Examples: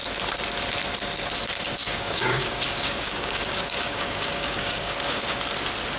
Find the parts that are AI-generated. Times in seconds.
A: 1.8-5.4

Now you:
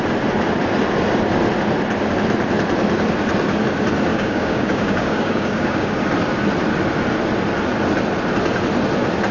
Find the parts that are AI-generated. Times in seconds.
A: 4.1-6.1

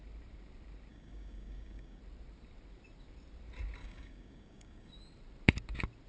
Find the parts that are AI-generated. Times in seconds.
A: 0.9-2.0; 3.8-4.9

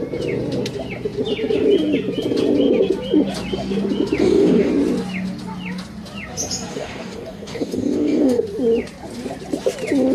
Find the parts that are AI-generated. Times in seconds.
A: 4.2-4.7; 6.7-8.4

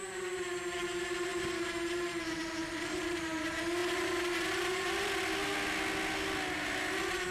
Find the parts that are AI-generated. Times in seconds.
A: none

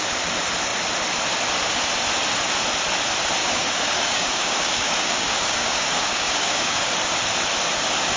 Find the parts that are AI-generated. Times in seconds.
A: 3.4-6.9

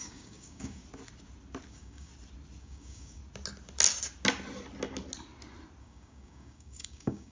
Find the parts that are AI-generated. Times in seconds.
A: 0.0-0.8; 1.7-2.1; 2.6-3.2; 5.8-7.3